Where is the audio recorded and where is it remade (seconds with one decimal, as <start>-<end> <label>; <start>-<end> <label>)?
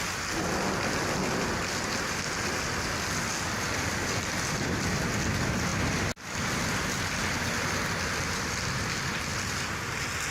0.0-10.3 recorded